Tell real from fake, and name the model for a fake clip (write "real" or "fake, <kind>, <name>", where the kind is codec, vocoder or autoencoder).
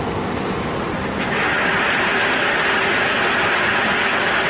real